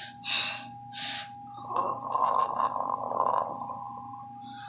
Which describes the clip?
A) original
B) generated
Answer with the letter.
A